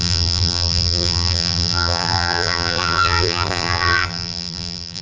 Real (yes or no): no